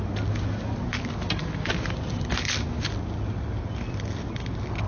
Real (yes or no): yes